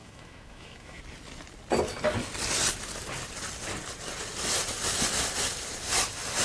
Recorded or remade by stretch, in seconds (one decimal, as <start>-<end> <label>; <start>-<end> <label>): 0.0-1.0 remade; 1.0-6.4 recorded